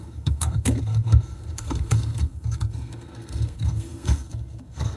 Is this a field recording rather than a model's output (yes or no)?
no